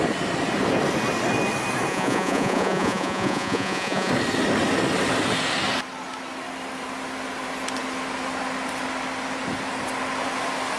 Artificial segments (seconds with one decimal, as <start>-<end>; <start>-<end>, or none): 1.9-4.1